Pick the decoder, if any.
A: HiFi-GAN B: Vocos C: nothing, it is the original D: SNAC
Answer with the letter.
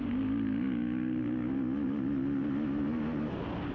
C